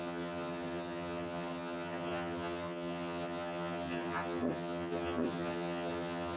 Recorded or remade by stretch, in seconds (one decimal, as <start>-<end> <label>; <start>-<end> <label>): 0.0-6.4 remade